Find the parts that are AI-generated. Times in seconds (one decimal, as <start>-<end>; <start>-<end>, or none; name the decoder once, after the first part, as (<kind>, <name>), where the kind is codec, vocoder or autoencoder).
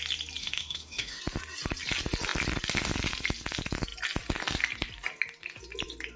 0.4-1.2 (autoencoder, DAC-VAE)